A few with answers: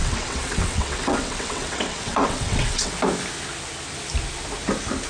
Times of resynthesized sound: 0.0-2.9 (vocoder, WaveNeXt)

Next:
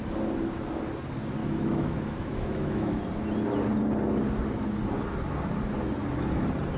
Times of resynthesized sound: 1.4-3.0 (autoencoder, DAC-VAE)

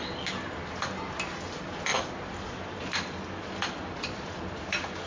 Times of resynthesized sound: 1.9-5.1 (vocoder, BigVGAN v2)

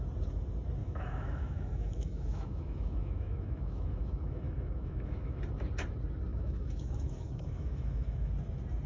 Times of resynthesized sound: 0.8-5.4 (autoencoder, DAC-VAE); 6.3-8.3

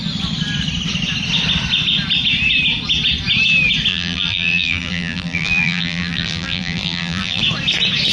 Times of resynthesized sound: 3.9-7.4 (vocoder, BigVGAN v2)

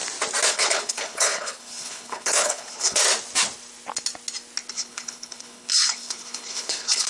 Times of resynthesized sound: 0.5-3.0 (codec, HILCodec); 4.7-7.1

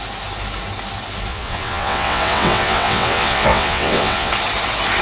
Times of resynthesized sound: 1.3-4.3 (vocoder, WaveNeXt)